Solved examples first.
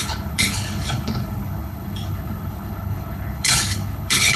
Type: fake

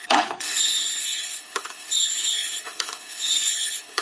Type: fake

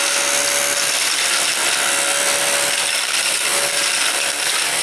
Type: real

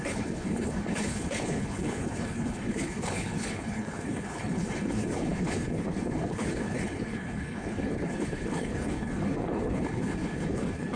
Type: fake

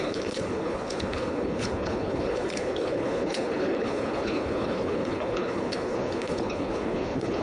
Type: fake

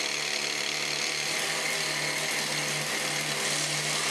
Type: real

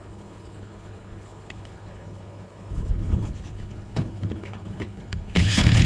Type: fake